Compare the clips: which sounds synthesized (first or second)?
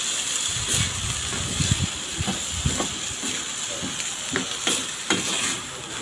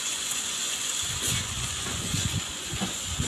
second